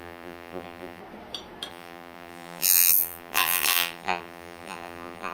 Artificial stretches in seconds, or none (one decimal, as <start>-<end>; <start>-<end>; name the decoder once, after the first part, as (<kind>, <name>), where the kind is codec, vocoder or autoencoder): 0.0-1.0 (vocoder, BigVGAN v2); 1.7-5.3